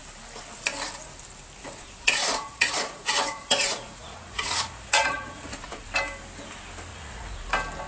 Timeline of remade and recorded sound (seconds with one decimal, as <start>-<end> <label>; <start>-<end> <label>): 0.0-1.6 recorded; 1.6-5.9 remade; 5.9-6.9 recorded; 6.9-7.5 remade; 7.5-7.9 recorded